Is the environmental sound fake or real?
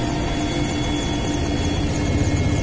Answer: real